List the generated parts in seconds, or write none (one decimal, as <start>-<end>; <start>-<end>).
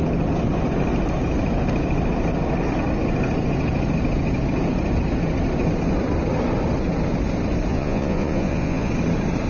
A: 7.7-8.9